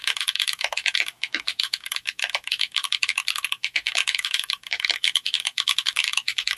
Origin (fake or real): fake